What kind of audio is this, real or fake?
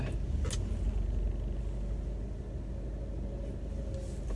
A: real